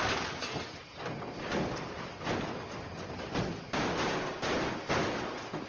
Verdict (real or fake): real